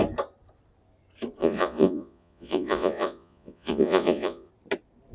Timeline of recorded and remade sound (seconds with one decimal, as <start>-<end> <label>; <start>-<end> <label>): 0.0-1.4 recorded; 1.4-4.5 remade; 4.5-5.1 recorded